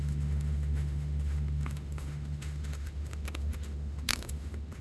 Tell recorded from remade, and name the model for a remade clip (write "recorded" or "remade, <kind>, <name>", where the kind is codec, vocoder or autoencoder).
remade, autoencoder, DAC-VAE